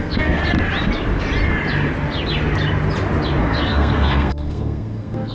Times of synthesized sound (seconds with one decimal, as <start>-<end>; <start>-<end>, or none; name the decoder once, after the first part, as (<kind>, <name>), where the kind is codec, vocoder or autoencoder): 0.0-0.4 (codec, SNAC); 3.4-5.3